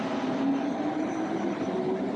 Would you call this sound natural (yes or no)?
yes